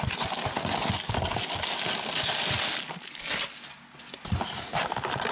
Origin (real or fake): real